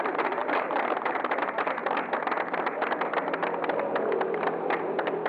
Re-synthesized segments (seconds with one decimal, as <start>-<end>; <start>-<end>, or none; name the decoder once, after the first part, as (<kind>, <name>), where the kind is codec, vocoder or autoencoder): 0.0-1.8 (vocoder, BigVGAN v2)